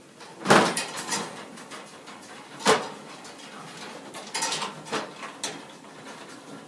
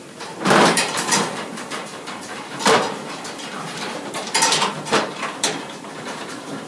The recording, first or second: first